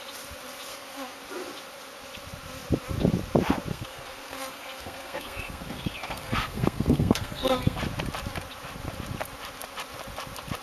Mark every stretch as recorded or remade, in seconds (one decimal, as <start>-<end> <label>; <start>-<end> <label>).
0.0-0.7 recorded; 0.7-1.2 remade; 1.2-3.7 recorded; 3.7-7.8 remade; 7.8-10.6 recorded